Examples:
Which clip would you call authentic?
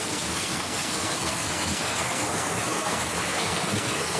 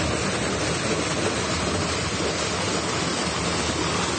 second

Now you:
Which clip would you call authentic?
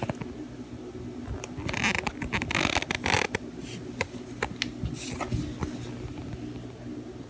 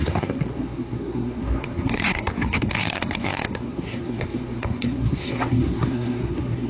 first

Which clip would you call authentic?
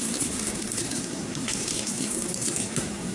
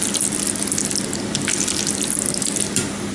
second